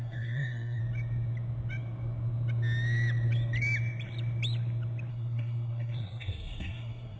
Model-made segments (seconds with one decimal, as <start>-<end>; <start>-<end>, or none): 0.0-0.8; 5.1-7.2